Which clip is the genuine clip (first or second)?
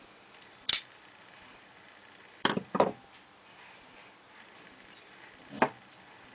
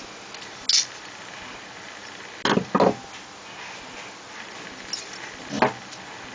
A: second